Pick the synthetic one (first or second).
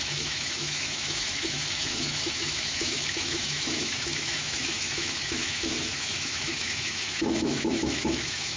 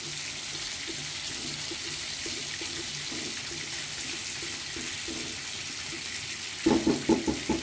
first